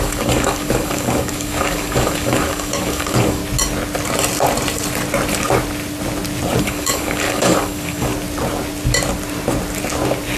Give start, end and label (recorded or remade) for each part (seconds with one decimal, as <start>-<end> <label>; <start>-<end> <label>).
0.0-3.4 remade; 3.4-6.6 recorded; 6.6-8.1 remade; 8.1-10.4 recorded